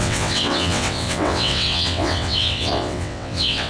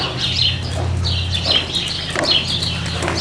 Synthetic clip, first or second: first